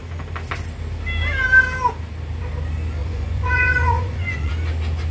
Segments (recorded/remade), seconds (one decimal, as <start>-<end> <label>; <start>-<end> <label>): 0.0-3.0 recorded; 3.0-4.5 remade; 4.5-5.1 recorded